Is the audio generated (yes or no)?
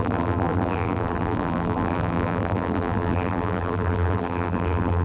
yes